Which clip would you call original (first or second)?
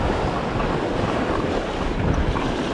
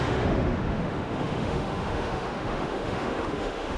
first